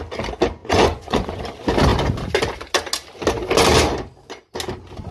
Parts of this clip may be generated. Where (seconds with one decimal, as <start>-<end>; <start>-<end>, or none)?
0.6-1.4